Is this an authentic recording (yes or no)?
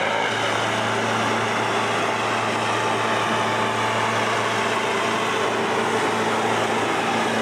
yes